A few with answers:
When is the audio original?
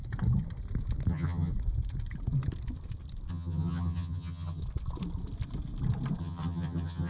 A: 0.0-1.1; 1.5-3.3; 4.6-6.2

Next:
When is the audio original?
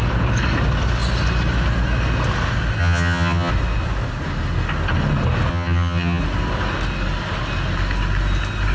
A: 0.0-2.8; 3.5-5.5; 6.2-8.7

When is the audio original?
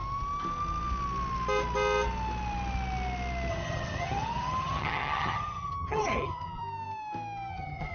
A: 0.0-3.5; 6.6-7.5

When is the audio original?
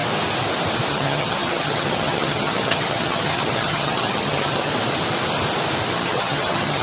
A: 0.0-0.9; 4.7-5.9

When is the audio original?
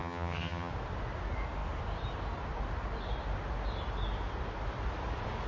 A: 0.7-5.5